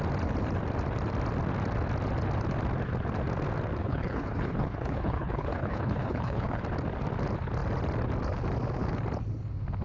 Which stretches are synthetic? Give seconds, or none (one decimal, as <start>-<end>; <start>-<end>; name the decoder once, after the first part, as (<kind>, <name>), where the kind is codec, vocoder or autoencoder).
3.8-6.6 (codec, HILCodec)

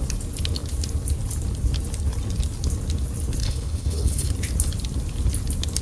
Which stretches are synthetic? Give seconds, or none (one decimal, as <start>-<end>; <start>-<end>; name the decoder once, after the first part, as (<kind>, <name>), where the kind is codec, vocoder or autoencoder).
3.4-4.3 (codec, HILCodec)

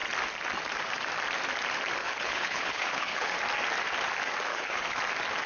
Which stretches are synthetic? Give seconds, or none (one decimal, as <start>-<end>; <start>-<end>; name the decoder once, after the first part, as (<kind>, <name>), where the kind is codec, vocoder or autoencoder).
2.0-3.3 (codec, HILCodec); 4.5-5.0

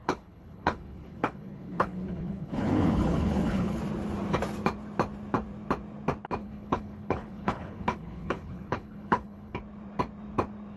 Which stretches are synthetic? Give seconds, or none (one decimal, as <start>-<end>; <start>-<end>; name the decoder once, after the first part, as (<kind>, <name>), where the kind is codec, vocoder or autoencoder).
0.0-3.8 (codec, HILCodec); 6.4-9.6